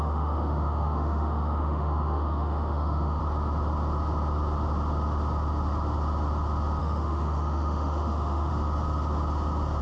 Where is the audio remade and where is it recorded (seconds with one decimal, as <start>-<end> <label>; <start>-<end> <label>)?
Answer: 0.0-3.2 remade; 3.2-6.8 recorded; 6.8-8.5 remade; 8.5-9.8 recorded